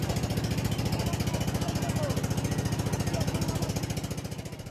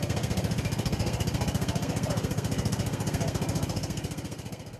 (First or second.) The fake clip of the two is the second